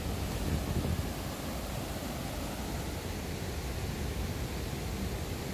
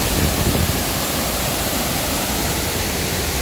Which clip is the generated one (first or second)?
second